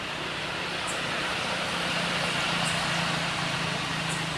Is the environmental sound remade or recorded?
recorded